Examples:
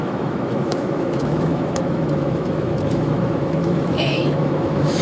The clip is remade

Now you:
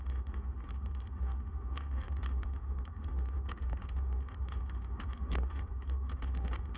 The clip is remade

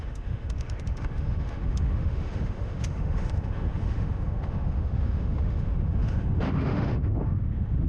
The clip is remade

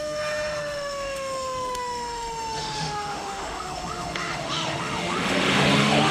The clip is remade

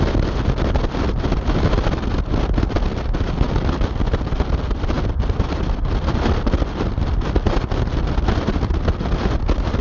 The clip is recorded